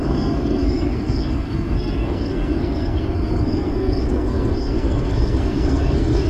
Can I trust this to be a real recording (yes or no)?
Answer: no